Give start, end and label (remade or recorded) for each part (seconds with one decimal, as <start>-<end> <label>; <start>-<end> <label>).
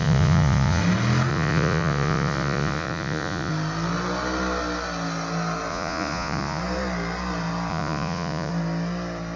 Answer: 0.0-0.8 remade; 0.8-1.3 recorded; 1.3-3.5 remade; 3.5-5.7 recorded; 5.7-6.6 remade; 6.6-7.7 recorded; 7.7-8.5 remade; 8.5-9.4 recorded